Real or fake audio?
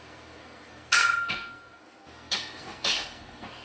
fake